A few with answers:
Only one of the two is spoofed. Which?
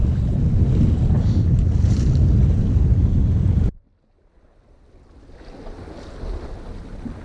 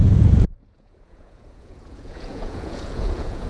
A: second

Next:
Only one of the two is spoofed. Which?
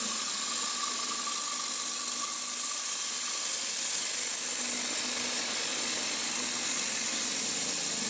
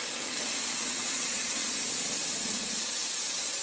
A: second